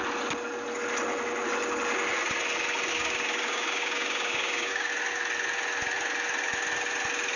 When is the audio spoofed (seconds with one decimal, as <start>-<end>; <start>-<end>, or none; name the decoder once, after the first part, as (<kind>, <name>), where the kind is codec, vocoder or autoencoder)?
2.9-4.9 (codec, DAC)